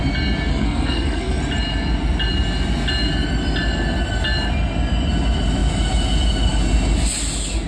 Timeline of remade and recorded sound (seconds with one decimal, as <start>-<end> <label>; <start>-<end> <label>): 0.0-0.5 recorded; 0.5-1.4 remade; 1.4-7.7 recorded